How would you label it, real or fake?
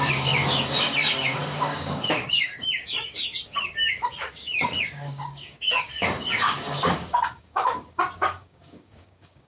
fake